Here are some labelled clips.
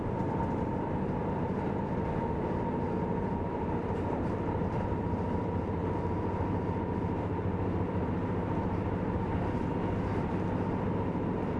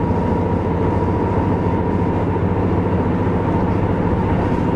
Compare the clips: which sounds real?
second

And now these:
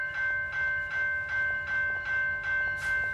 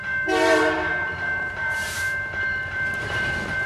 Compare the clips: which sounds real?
first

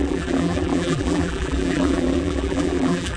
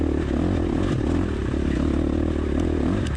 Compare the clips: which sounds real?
second